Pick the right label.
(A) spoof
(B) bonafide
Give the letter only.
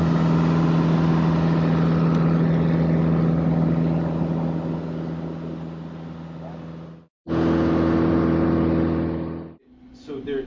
B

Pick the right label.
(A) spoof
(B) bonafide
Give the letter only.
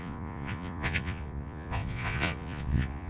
A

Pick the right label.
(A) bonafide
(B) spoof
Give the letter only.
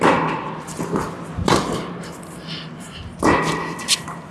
A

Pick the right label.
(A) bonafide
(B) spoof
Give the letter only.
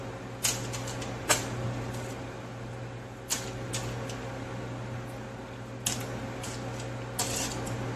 A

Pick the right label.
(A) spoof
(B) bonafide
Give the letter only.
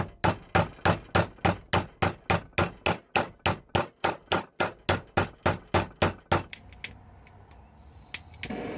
B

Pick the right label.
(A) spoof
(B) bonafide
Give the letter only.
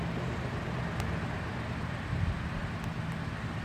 B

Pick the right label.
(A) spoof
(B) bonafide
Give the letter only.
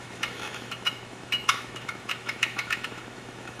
A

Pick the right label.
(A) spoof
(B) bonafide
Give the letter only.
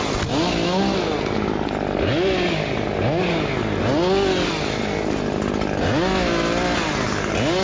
B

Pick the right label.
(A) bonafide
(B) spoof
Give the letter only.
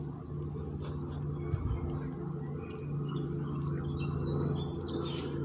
A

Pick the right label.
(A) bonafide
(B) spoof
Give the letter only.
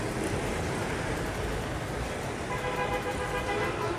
A